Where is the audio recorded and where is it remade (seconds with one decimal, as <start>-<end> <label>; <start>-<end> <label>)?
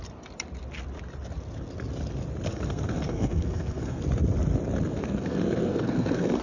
0.0-2.5 recorded; 2.5-4.0 remade; 4.0-4.9 recorded; 4.9-6.4 remade